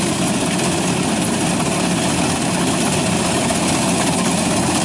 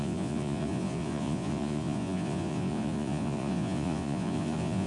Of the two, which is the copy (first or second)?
second